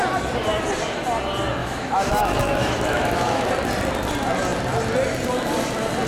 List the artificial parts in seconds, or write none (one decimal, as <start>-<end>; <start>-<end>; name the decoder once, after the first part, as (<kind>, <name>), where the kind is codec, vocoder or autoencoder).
1.6-3.5 (autoencoder, DAC-VAE)